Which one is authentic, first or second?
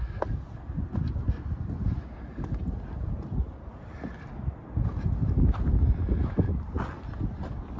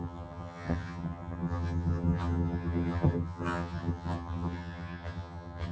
first